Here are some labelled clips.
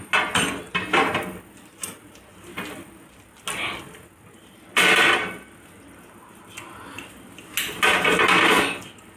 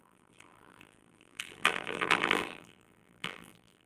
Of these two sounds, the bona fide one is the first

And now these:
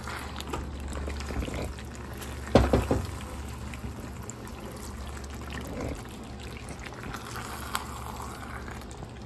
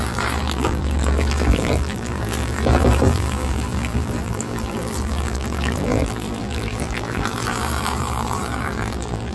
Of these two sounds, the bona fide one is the first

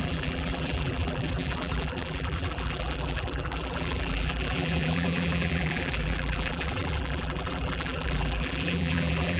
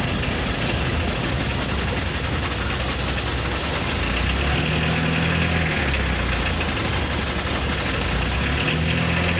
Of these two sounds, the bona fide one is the second